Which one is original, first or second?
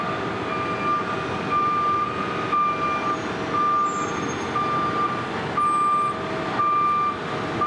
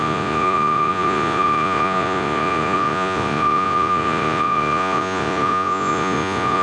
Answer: first